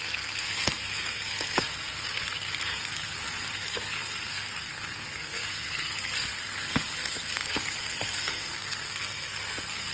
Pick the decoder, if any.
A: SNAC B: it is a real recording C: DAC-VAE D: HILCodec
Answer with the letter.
A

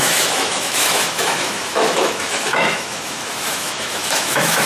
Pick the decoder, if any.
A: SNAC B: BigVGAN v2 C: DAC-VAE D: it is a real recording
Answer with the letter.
C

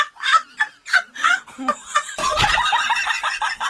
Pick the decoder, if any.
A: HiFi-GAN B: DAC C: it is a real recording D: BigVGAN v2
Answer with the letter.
C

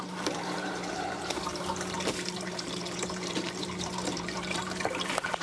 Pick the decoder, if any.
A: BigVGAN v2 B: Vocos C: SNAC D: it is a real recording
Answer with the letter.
A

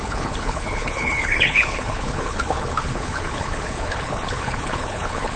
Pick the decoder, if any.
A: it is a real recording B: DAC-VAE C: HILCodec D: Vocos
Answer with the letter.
C